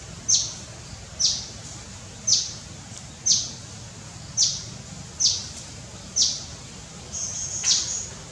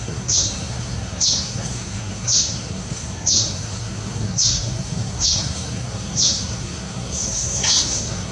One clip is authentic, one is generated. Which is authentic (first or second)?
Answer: first